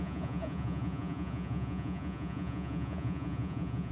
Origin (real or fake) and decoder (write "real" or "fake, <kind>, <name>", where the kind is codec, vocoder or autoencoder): fake, vocoder, Vocos